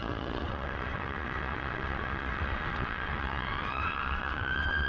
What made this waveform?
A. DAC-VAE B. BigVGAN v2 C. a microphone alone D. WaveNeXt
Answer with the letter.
D